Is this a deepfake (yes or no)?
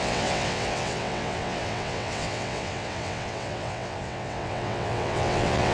yes